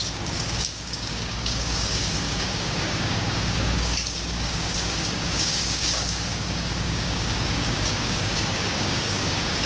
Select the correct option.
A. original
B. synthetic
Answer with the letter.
B